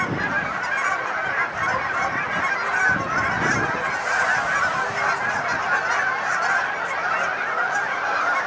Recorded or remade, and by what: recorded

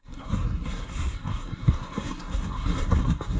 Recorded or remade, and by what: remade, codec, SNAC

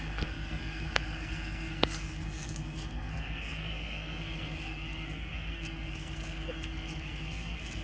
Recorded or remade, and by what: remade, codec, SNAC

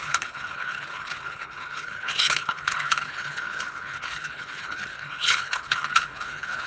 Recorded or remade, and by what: remade, codec, HILCodec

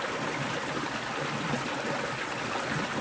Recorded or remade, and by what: recorded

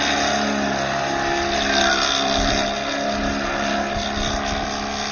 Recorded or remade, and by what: recorded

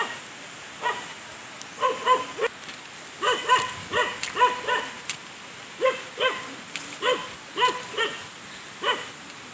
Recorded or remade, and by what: recorded